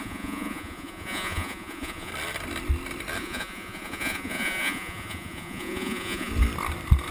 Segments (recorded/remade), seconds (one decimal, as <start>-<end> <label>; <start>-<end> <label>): 0.0-2.1 remade; 2.1-3.2 recorded; 3.2-6.3 remade; 6.3-7.1 recorded